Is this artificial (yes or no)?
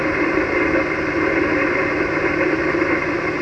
no